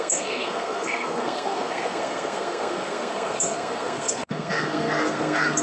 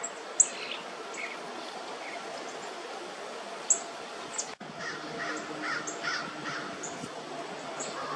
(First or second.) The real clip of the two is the second